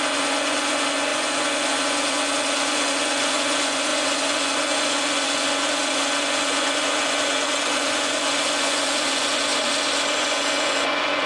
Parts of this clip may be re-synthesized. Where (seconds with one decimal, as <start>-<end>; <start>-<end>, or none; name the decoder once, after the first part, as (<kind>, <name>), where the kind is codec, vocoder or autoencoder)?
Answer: 0.0-9.5 (vocoder, Vocos); 10.1-11.3